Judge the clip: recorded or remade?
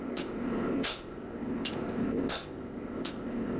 remade